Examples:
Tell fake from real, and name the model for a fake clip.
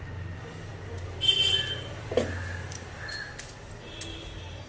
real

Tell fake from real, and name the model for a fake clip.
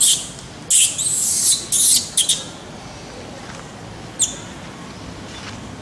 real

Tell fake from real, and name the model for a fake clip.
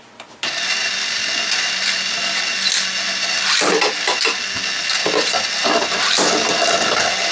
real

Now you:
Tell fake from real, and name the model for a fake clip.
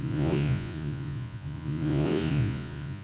fake, vocoder, Vocos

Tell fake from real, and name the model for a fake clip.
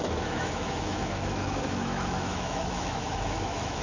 fake, autoencoder, DAC-VAE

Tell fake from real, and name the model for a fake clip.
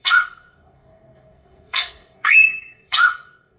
fake, codec, SNAC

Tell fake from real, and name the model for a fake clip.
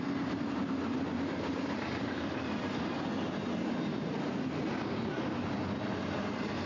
real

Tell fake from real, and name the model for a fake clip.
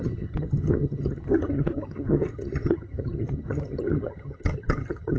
fake, vocoder, HiFi-GAN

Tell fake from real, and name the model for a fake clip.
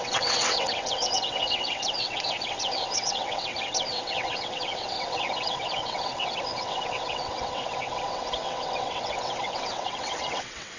fake, vocoder, WaveNeXt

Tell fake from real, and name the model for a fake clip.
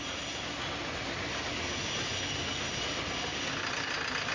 real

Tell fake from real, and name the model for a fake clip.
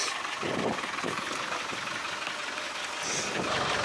real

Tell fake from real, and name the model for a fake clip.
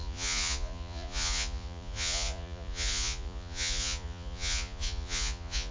fake, vocoder, Vocos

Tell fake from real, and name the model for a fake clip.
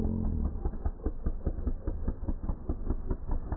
real